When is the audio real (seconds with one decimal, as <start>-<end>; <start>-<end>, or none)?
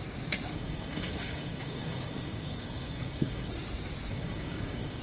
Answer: 0.0-0.5; 3.5-4.1